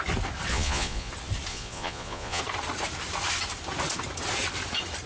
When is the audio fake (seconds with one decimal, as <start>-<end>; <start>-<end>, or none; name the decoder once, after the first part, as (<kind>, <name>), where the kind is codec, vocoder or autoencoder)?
0.5-1.1 (vocoder, Vocos); 1.5-2.4